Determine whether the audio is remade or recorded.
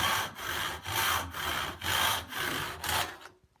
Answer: recorded